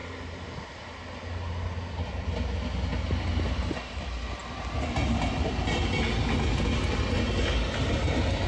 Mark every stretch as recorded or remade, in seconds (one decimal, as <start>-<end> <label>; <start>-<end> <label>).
0.0-8.5 recorded